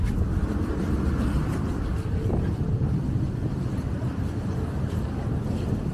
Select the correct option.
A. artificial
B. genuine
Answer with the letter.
B